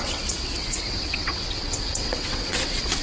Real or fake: fake